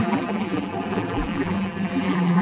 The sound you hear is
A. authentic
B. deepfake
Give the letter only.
B